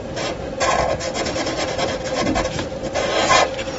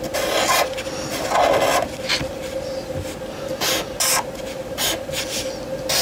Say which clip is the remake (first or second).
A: first